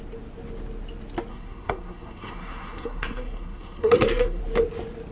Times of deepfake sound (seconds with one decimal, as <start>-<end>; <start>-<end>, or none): 1.3-4.4